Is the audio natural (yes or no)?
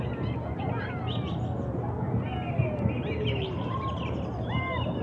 yes